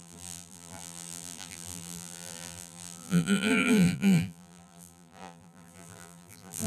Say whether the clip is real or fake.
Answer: fake